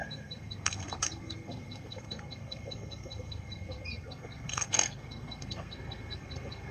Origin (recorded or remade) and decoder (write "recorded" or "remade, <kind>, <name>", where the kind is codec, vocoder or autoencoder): remade, codec, SNAC